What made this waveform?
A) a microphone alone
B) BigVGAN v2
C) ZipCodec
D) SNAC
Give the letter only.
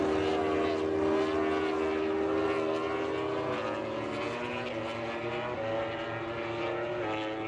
A